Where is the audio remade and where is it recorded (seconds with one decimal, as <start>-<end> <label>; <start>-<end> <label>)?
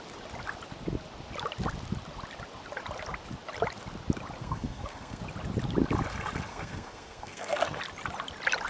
0.0-4.4 recorded; 4.4-5.2 remade; 5.2-6.5 recorded; 6.5-7.8 remade; 7.8-8.7 recorded